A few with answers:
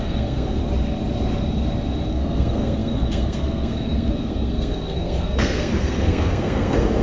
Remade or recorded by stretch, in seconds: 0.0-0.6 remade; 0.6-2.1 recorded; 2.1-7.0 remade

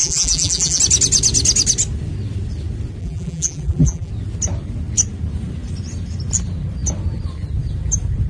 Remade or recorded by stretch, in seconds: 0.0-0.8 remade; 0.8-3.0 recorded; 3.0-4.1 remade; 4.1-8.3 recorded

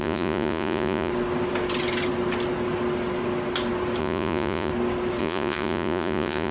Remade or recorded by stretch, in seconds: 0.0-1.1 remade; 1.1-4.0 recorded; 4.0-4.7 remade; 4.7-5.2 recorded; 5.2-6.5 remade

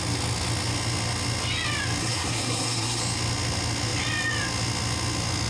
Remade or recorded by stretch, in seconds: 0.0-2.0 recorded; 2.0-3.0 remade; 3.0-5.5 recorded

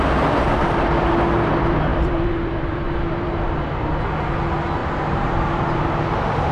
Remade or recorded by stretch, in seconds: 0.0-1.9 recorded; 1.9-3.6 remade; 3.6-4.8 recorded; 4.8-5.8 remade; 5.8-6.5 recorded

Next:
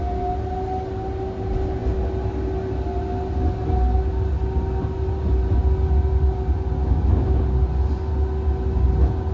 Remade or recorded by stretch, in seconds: 0.0-6.8 recorded; 6.8-7.4 remade; 7.4-9.3 recorded

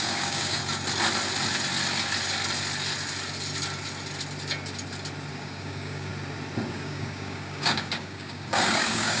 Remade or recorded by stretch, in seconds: 0.0-0.6 remade; 0.6-5.3 recorded; 5.3-6.1 remade; 6.1-6.7 recorded; 6.7-9.2 remade